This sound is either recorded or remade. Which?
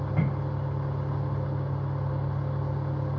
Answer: recorded